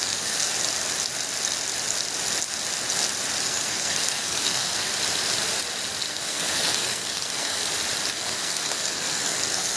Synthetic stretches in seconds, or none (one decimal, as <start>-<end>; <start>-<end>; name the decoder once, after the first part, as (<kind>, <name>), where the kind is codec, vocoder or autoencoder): 0.0-0.5 (codec, SNAC); 3.4-4.9; 6.1-7.6; 8.1-9.8